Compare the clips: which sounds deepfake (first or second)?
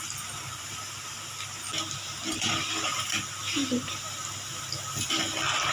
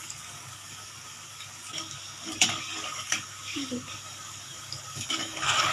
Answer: second